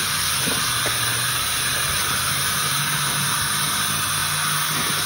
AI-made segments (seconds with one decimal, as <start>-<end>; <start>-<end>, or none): none